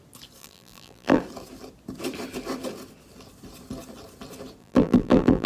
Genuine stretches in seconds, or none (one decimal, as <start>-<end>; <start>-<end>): 0.0-0.4; 1.2-4.6